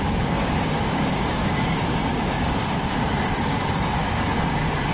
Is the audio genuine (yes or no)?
no